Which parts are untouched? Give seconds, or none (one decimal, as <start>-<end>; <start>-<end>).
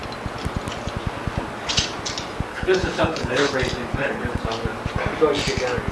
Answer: 0.0-2.5; 3.5-3.9; 4.4-5.9